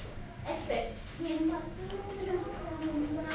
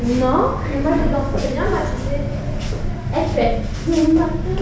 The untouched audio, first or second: second